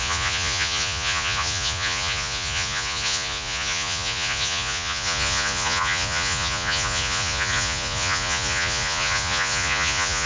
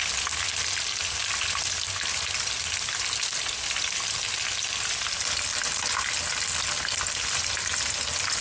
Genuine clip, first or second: second